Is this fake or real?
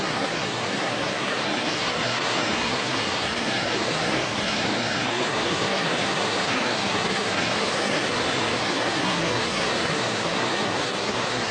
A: fake